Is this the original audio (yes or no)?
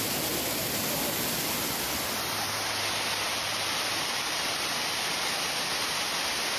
yes